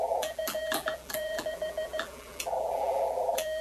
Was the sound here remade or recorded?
remade